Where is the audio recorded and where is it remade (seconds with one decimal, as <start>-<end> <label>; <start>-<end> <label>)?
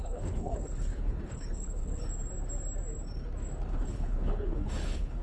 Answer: 0.0-2.0 remade; 2.0-3.7 recorded; 3.7-5.2 remade